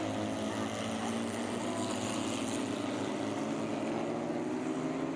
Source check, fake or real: real